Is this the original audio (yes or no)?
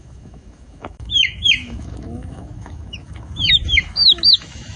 no